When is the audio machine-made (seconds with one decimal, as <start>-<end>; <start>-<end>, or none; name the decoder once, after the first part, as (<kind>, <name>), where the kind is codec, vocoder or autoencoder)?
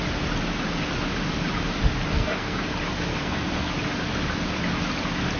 2.1-2.7 (codec, SNAC); 3.1-3.7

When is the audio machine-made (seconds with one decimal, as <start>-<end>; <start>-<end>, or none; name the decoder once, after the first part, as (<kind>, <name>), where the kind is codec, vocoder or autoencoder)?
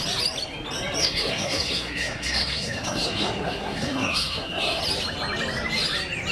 1.0-4.8 (codec, SNAC)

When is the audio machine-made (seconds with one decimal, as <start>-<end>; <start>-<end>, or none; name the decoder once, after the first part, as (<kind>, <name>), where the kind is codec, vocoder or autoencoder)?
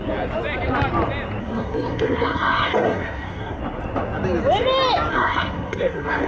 1.4-3.6 (codec, SNAC); 5.1-6.3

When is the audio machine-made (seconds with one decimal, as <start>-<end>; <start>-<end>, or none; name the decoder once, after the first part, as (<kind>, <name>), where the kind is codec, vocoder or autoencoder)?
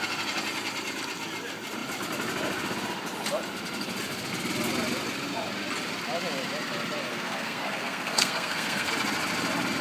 7.1-8.9 (codec, SNAC)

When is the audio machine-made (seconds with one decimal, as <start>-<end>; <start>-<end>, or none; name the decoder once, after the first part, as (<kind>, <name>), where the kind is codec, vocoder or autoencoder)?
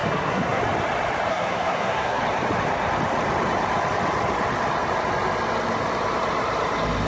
0.0-0.6 (codec, SNAC); 1.3-2.2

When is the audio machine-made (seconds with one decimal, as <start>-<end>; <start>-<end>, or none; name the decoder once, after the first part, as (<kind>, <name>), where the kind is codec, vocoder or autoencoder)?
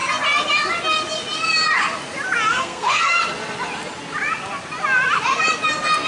2.5-3.2 (codec, SNAC)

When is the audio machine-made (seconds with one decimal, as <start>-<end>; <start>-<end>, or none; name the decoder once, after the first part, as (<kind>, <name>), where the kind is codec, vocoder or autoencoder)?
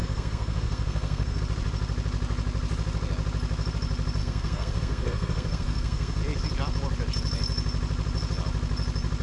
0.0-1.4 (codec, SNAC); 4.2-6.2